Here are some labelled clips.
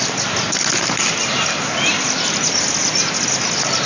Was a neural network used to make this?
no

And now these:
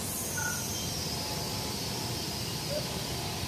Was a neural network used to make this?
no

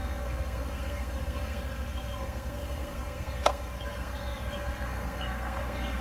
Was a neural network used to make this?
yes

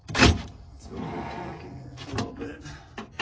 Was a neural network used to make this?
no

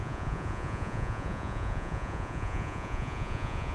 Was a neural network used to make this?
yes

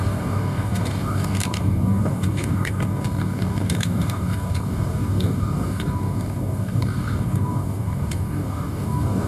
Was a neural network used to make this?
yes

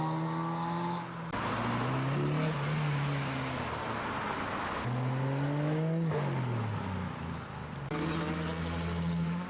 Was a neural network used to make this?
no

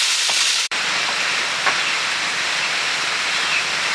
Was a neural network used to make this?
yes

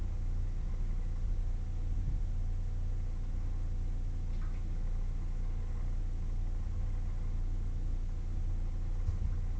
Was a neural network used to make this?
no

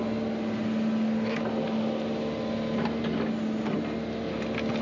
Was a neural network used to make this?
no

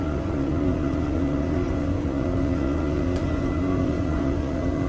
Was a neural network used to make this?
yes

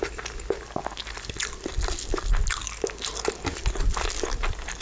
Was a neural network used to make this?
no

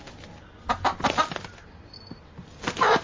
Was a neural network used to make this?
no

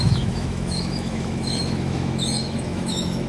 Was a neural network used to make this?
yes